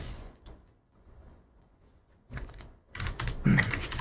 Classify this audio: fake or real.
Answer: fake